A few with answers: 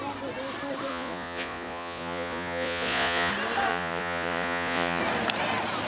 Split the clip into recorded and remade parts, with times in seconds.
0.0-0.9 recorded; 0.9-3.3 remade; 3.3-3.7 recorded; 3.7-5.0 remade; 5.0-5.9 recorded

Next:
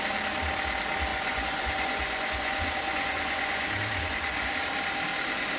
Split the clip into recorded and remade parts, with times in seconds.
0.0-1.1 recorded; 1.1-4.5 remade; 4.5-5.6 recorded

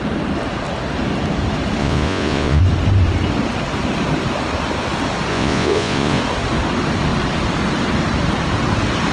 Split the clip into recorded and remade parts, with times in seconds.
0.0-1.8 recorded; 1.8-2.6 remade; 2.6-5.3 recorded; 5.3-6.2 remade; 6.2-9.1 recorded

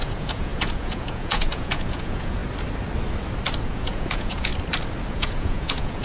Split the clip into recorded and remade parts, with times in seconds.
0.0-2.4 remade; 2.4-3.6 recorded; 3.6-4.5 remade; 4.5-5.1 recorded; 5.1-6.0 remade

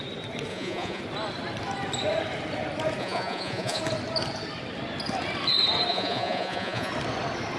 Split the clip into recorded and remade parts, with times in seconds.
0.0-0.5 recorded; 0.5-1.0 remade; 1.0-3.0 recorded; 3.0-3.8 remade; 3.8-5.9 recorded; 5.9-6.9 remade; 6.9-7.6 recorded